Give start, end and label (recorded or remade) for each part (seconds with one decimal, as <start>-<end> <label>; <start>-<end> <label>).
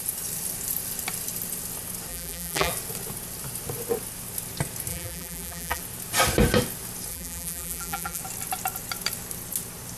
0.0-2.1 recorded; 2.1-2.7 remade; 2.7-4.9 recorded; 4.9-5.8 remade; 5.8-7.1 recorded; 7.1-8.2 remade; 8.2-10.0 recorded